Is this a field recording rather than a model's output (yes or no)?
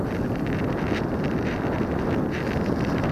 no